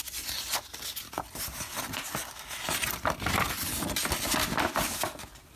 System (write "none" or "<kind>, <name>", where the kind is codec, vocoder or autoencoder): none